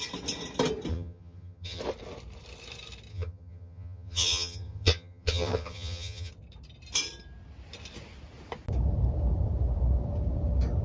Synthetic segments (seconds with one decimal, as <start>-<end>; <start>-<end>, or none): 0.9-1.8; 3.1-6.3